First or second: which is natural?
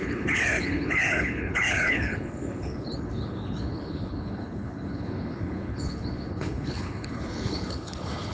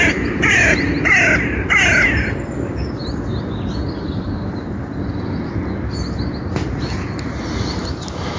second